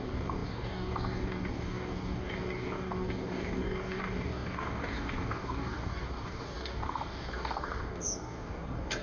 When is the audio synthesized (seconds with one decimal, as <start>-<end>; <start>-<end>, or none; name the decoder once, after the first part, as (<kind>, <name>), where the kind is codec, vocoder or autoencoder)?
0.0-9.0 (codec, DAC)